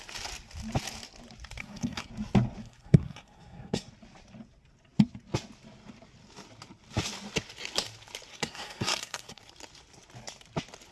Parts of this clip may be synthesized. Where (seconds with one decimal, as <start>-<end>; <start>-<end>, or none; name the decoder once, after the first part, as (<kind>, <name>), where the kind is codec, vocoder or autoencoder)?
1.6-2.1 (codec, SNAC); 2.6-3.9; 8.3-9.4